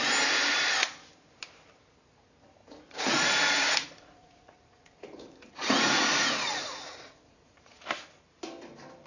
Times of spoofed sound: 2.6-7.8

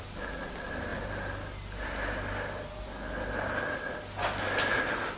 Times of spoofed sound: none

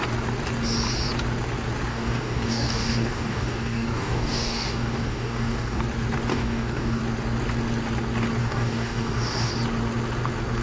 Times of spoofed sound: 1.9-5.8; 6.3-7.0; 8.4-9.5

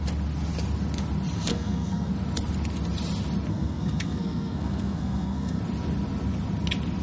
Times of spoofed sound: 1.5-2.1; 3.5-5.6